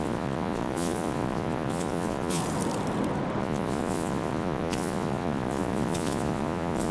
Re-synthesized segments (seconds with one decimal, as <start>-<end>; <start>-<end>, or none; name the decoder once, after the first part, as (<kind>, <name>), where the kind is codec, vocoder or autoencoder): 0.0-2.4 (vocoder, Vocos); 3.4-6.9